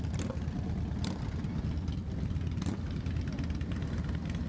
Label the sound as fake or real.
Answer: real